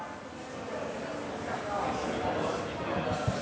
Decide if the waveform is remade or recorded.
recorded